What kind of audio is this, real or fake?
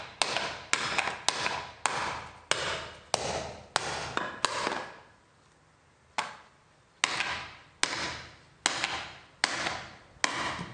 real